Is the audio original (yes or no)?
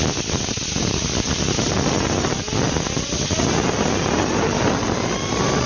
yes